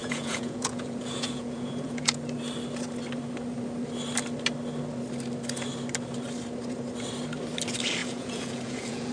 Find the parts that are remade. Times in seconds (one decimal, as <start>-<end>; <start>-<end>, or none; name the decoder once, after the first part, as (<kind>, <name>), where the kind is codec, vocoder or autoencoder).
0.0-2.2 (vocoder, Vocos); 8.0-9.1